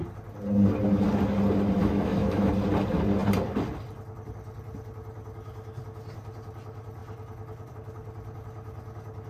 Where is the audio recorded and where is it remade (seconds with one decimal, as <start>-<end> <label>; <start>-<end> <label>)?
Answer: 0.0-1.8 recorded; 1.8-2.5 remade; 2.5-9.3 recorded